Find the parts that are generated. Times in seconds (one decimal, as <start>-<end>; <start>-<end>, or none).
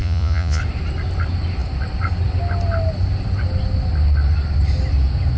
0.0-0.6